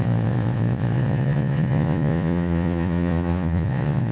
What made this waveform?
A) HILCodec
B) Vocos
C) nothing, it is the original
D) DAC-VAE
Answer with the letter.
B